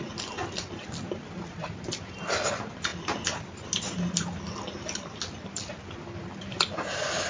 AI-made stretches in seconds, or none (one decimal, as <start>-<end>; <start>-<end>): none